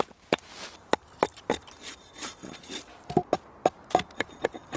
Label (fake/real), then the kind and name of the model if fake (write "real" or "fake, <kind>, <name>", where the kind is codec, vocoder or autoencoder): real